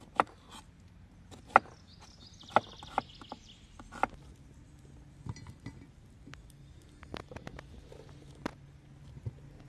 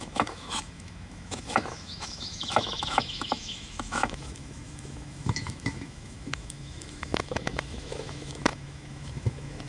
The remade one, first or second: second